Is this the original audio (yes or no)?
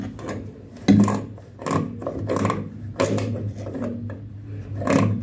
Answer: yes